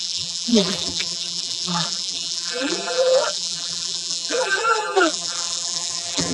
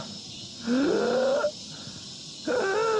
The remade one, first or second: first